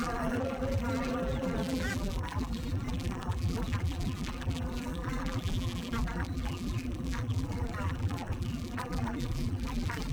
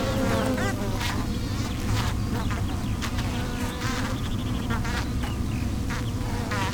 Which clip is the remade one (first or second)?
first